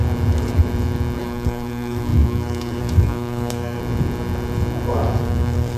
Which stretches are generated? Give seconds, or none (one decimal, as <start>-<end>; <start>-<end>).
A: 1.2-3.8; 5.2-5.8